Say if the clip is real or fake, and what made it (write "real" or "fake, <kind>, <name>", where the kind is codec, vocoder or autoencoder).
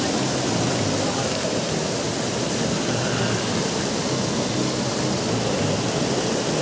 real